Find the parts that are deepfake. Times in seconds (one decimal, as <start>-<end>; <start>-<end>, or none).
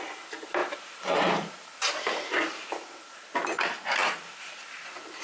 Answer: none